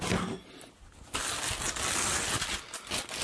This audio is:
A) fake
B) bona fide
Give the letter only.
B